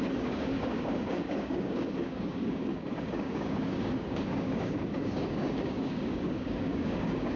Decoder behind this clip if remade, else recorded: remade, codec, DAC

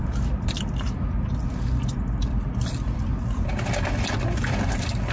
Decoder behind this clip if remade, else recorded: recorded